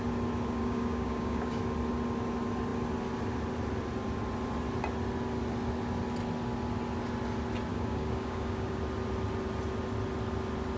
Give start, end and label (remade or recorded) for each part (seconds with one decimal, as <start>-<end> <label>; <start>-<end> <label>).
0.0-0.6 recorded; 0.6-1.6 remade; 1.6-7.7 recorded; 7.7-8.8 remade; 8.8-10.8 recorded